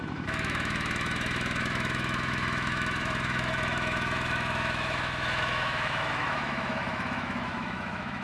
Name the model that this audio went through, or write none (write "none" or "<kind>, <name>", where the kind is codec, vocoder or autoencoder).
autoencoder, DAC-VAE